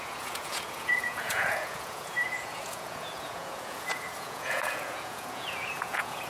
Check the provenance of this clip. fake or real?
fake